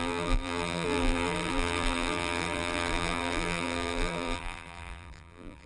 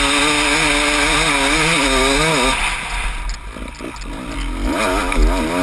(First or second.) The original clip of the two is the second